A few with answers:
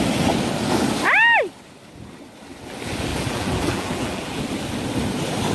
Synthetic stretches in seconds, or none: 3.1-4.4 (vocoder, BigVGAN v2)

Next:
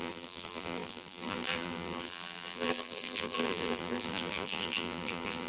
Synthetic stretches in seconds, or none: 0.0-5.5 (vocoder, BigVGAN v2)

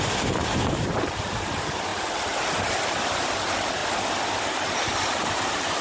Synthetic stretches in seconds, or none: 0.0-1.9 (vocoder, BigVGAN v2); 2.9-3.8; 4.6-5.8

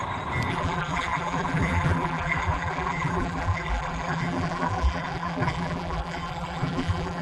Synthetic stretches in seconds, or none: 0.5-7.2 (vocoder, BigVGAN v2)